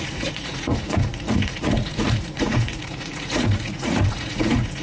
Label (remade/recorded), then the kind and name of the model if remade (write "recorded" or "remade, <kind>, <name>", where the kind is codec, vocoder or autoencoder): remade, vocoder, Vocos